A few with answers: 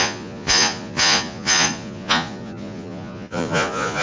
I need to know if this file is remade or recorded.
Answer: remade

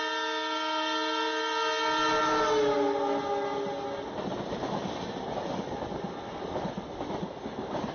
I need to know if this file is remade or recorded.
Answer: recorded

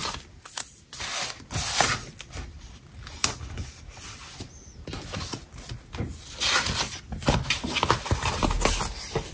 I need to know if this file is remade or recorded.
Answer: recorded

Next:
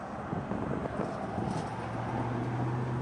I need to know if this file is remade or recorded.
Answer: recorded